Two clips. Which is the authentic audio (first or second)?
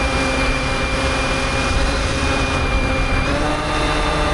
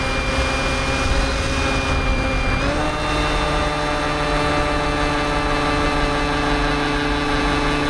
second